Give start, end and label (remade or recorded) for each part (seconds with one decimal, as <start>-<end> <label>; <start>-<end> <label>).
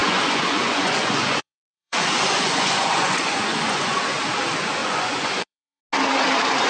0.0-4.0 remade; 4.0-4.8 recorded; 4.8-5.8 remade; 5.8-6.7 recorded